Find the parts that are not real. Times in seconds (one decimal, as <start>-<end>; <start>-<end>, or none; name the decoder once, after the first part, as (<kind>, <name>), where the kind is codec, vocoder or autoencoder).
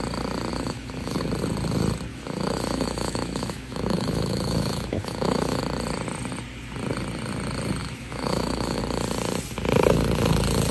0.5-1.2 (autoencoder, DAC-VAE); 2.1-5.6; 7.8-8.8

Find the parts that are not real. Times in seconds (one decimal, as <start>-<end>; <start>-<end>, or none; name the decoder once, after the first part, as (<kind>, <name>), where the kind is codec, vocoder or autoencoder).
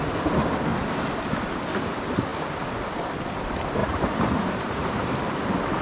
3.8-5.1 (vocoder, BigVGAN v2)